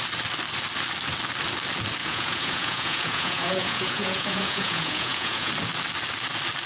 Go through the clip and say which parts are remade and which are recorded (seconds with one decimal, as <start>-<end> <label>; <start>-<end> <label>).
0.0-2.0 recorded; 2.0-5.5 remade; 5.5-6.7 recorded